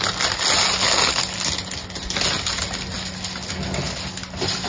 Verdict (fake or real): real